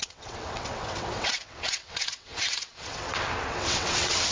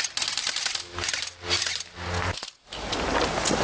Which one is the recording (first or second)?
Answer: second